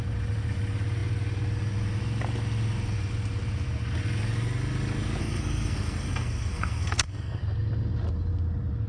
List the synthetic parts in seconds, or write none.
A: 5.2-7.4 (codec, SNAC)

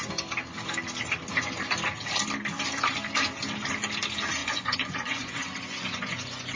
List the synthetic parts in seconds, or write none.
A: 4.4-6.6 (vocoder, Vocos)

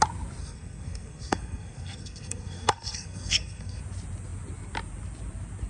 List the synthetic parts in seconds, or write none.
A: 0.4-3.8 (codec, SNAC)

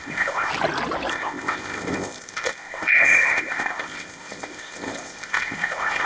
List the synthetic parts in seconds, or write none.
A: 0.0-0.5 (codec, ZipCodec); 1.1-6.1

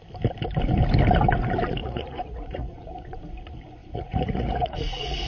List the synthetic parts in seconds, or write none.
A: 1.8-3.2 (vocoder, Vocos); 3.8-5.3

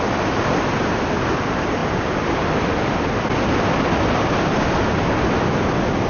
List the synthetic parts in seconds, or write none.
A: none